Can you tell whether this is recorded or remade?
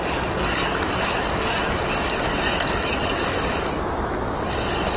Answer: recorded